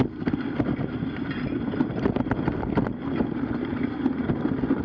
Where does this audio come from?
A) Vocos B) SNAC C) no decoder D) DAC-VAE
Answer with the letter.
C